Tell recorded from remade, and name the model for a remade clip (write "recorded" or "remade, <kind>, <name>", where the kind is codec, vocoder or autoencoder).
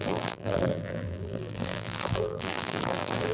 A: remade, vocoder, BigVGAN v2